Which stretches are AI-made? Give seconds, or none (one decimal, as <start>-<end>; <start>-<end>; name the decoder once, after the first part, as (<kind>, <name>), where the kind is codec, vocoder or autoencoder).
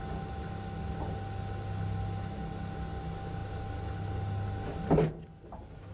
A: none